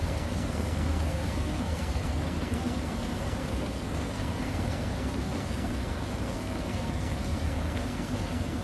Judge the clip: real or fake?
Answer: fake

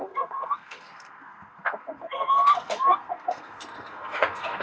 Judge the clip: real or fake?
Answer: fake